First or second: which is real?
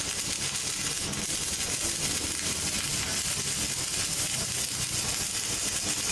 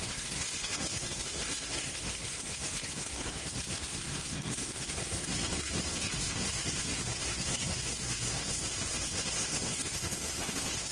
first